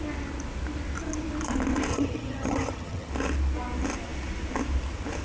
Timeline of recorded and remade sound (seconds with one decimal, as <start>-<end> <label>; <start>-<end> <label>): 0.0-1.9 recorded; 1.9-3.1 remade; 3.1-5.2 recorded